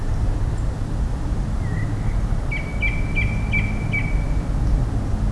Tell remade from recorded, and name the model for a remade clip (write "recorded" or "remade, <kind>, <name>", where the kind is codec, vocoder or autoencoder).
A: recorded